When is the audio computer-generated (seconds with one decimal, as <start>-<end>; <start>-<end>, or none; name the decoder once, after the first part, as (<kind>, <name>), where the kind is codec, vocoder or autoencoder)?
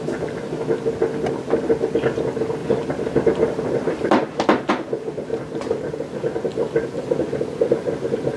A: 2.6-4.7 (vocoder, BigVGAN v2)